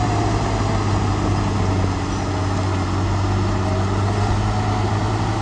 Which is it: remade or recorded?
recorded